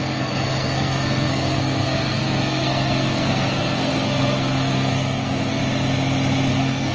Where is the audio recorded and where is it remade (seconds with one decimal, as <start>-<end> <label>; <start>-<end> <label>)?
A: 0.0-5.6 remade; 5.6-6.5 recorded; 6.5-6.9 remade